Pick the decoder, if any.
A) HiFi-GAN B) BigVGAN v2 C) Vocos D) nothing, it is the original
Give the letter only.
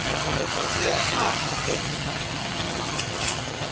A